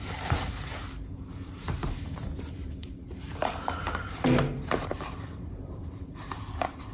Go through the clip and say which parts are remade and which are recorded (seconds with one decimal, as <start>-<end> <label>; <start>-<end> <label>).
0.0-6.9 remade